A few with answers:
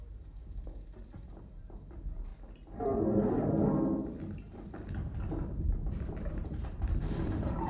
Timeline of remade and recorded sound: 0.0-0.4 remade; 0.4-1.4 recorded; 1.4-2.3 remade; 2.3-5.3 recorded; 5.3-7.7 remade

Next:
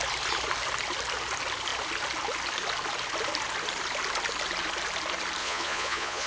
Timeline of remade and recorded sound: 0.0-5.4 recorded; 5.4-6.3 remade